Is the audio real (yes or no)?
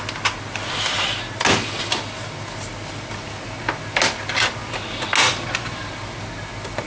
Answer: yes